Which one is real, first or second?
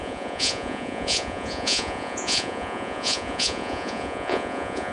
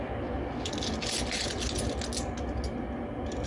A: second